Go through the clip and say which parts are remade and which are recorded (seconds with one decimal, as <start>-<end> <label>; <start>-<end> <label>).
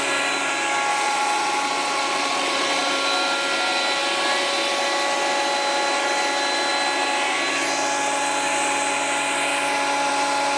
0.0-0.9 recorded; 0.9-2.9 remade; 2.9-10.6 recorded